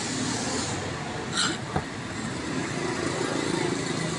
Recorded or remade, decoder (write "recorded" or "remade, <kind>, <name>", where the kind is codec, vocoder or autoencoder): recorded